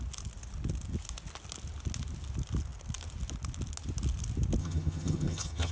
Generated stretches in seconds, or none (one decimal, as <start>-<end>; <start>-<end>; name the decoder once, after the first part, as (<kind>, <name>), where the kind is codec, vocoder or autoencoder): 4.6-5.7 (vocoder, HiFi-GAN)

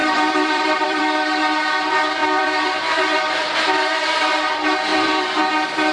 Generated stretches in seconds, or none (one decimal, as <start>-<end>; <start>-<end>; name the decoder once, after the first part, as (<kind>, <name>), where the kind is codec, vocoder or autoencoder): 0.0-1.0 (vocoder, BigVGAN v2); 2.2-3.2; 4.9-5.4

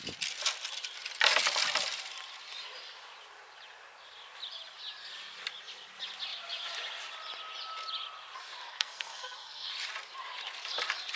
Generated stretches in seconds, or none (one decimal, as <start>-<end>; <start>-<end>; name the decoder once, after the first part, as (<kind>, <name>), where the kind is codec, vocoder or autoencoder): 8.7-9.7 (codec, SNAC)

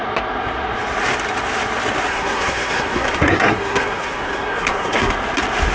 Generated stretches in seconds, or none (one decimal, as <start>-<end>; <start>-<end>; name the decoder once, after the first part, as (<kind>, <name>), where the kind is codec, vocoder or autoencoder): 2.1-5.1 (codec, SNAC)

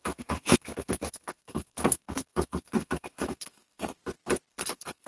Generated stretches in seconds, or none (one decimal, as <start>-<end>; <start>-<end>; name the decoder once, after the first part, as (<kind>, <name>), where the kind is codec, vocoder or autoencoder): 0.0-4.0 (codec, SNAC); 4.5-5.1